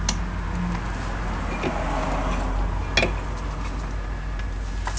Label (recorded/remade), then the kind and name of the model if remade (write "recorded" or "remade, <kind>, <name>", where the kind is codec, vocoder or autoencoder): recorded